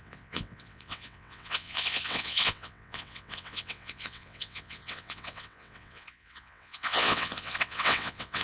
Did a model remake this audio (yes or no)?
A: yes